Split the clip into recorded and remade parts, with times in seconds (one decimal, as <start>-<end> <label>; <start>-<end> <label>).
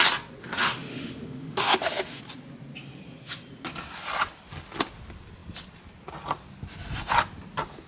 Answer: 0.0-0.4 recorded; 0.4-2.2 remade; 2.2-7.9 recorded